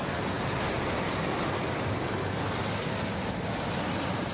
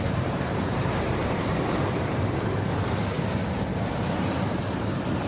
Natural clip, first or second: first